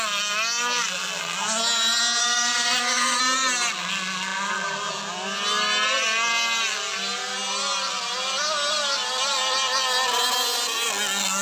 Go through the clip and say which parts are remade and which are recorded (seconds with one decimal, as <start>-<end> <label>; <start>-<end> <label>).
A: 0.0-2.2 recorded; 2.2-3.2 remade; 3.2-11.4 recorded